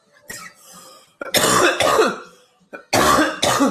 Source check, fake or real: real